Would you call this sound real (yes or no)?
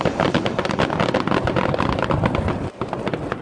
yes